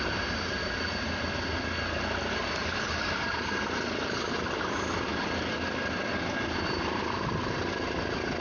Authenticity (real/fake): real